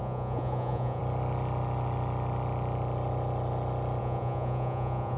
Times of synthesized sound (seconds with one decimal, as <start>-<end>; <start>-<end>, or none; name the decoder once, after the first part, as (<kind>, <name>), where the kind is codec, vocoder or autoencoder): 0.0-1.0 (vocoder, Vocos); 4.0-5.2